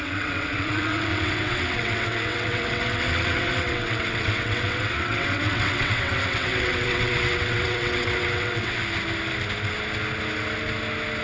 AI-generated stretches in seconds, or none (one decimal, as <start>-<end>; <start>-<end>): 0.0-8.8